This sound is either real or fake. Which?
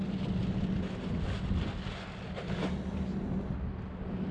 real